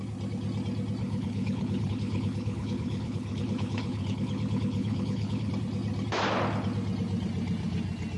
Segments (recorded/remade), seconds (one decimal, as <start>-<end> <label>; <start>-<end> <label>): 0.0-1.0 recorded; 1.0-5.5 remade; 5.5-8.2 recorded